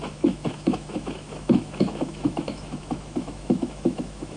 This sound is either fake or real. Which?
fake